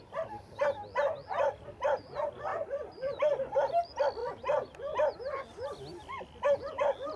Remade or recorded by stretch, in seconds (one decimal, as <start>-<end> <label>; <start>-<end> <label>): 0.0-7.2 recorded